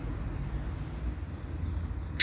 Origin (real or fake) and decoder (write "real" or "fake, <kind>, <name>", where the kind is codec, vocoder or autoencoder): real